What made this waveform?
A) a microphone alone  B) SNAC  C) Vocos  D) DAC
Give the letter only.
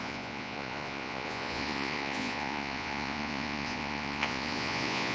C